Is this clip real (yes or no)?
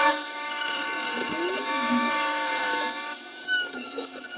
no